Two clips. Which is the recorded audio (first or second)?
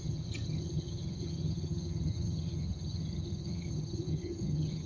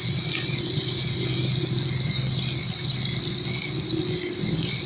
second